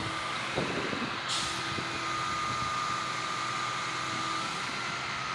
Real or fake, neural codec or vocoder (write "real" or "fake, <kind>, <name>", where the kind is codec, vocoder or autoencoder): real